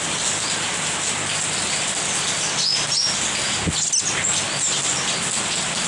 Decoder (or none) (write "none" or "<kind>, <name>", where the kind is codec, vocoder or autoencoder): none